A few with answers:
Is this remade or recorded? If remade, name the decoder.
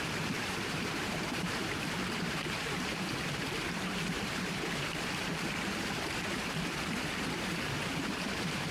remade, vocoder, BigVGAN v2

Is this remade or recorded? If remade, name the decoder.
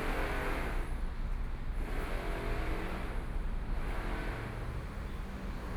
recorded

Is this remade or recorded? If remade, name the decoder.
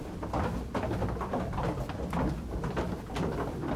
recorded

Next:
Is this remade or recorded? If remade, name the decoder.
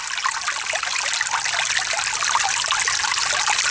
recorded